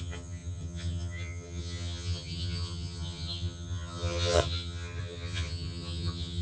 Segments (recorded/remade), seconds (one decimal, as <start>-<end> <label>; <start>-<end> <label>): 0.0-6.4 remade